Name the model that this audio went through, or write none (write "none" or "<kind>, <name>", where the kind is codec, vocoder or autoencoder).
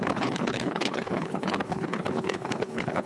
codec, HILCodec